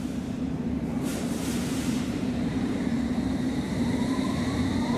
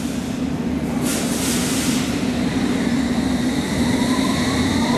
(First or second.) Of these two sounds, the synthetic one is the first